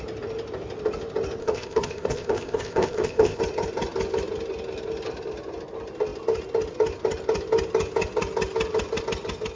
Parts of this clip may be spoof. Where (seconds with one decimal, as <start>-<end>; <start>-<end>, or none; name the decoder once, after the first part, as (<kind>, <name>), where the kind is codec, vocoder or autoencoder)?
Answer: 1.4-3.4 (codec, ZipCodec)